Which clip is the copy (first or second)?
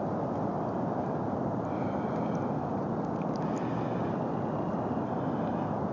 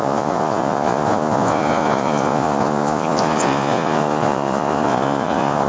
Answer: second